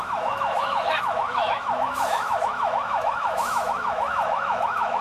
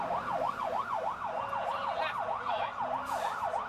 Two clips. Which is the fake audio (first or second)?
first